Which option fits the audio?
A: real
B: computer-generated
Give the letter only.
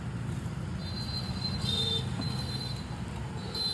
A